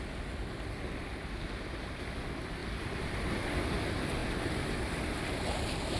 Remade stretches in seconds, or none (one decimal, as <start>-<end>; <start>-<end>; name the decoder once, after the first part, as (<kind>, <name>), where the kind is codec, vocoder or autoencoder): none